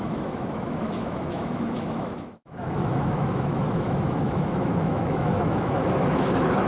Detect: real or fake fake